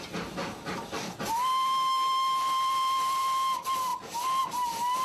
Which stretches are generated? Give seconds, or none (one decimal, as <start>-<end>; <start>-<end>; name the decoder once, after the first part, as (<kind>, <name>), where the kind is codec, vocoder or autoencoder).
1.5-2.4 (autoencoder, DAC-VAE)